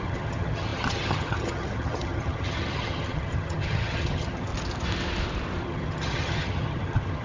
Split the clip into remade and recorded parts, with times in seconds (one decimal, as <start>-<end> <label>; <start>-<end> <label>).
0.0-4.5 remade; 4.5-5.6 recorded; 5.6-7.2 remade